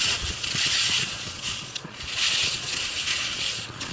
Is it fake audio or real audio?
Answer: fake